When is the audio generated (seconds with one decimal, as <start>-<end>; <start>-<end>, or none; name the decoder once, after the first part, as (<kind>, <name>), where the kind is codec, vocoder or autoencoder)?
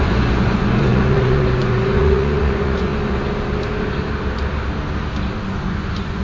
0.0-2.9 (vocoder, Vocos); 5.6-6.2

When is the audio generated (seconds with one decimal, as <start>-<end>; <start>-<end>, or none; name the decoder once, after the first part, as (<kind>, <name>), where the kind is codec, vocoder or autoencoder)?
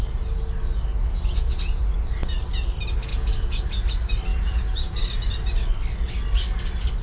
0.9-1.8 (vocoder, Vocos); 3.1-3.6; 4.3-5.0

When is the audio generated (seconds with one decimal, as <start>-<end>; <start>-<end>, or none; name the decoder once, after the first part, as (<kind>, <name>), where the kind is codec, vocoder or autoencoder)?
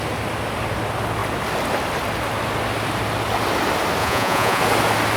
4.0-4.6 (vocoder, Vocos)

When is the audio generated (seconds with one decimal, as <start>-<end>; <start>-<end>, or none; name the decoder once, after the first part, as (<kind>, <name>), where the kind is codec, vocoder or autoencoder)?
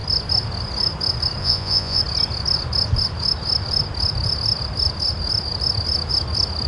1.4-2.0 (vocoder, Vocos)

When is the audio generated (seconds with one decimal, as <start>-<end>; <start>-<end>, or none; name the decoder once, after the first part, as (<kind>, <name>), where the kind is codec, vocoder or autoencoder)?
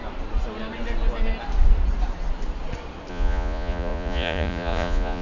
3.1-5.2 (vocoder, Vocos)